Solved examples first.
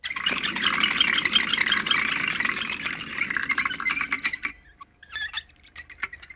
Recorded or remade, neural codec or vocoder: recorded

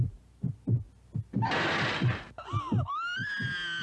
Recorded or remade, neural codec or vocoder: recorded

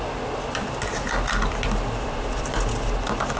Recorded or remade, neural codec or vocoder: recorded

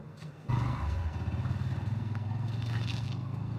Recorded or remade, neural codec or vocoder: remade, codec, SNAC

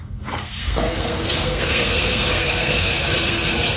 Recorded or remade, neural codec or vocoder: remade, codec, SNAC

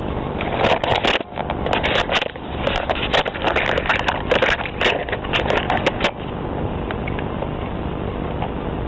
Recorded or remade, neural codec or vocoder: recorded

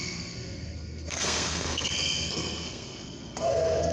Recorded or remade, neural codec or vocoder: remade, codec, SNAC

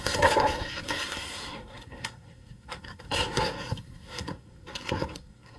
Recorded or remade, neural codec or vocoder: remade, codec, SNAC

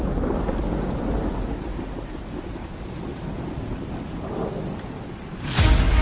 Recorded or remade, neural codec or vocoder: recorded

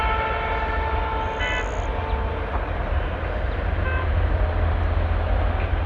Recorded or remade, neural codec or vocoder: recorded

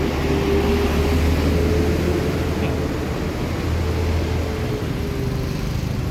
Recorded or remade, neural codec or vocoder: recorded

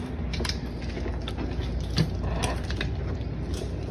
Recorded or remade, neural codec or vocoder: recorded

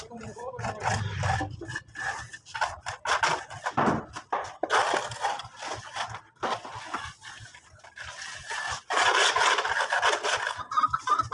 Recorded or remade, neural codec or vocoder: recorded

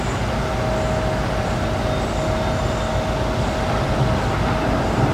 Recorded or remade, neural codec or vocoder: recorded